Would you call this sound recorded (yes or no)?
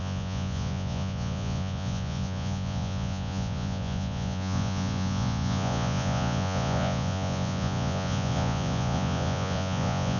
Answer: no